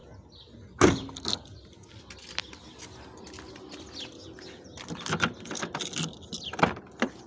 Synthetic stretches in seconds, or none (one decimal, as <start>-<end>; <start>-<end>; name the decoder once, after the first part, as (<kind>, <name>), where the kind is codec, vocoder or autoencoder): none